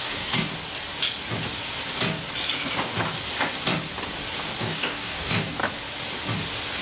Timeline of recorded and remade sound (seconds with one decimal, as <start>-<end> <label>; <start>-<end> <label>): 0.0-0.5 remade; 0.5-4.6 recorded; 4.6-5.6 remade; 5.6-6.8 recorded